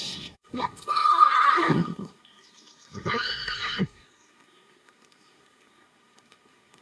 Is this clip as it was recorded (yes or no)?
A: no